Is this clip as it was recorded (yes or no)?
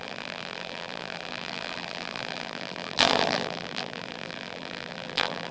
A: no